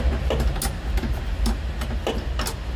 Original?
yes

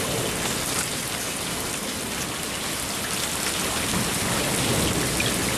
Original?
yes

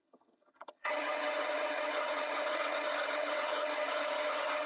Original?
no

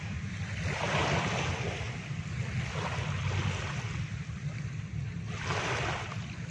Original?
yes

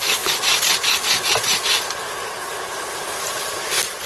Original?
no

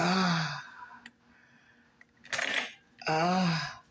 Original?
yes